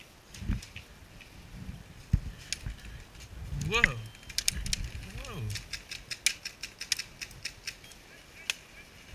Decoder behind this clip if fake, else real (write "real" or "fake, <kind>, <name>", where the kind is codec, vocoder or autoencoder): real